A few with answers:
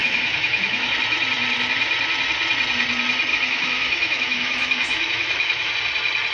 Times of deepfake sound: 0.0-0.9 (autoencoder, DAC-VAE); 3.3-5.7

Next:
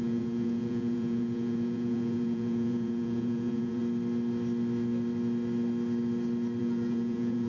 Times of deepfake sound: 0.0-3.8 (vocoder, Vocos); 6.6-7.5

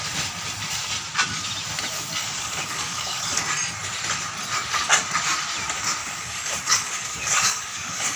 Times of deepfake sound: 2.2-3.4 (codec, DAC); 6.0-8.2

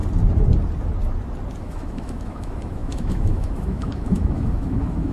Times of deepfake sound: 1.6-5.1 (autoencoder, DAC-VAE)

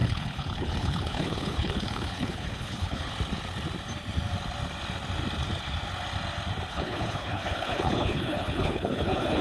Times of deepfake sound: 0.0-3.1 (codec, HILCodec); 6.7-9.4

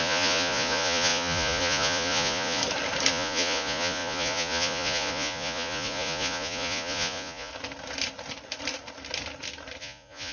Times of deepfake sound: 0.0-2.6 (vocoder, Vocos); 3.1-7.5; 9.8-10.3